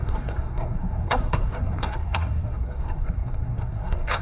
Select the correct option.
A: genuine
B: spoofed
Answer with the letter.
B